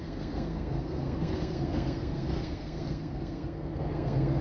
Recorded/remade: remade